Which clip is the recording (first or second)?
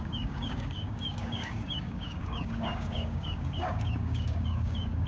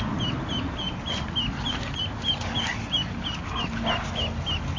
second